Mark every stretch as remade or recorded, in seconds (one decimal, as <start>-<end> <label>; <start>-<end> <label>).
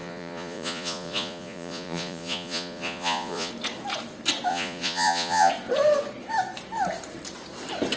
0.0-3.5 remade; 3.5-4.5 recorded; 4.5-5.5 remade; 5.5-8.0 recorded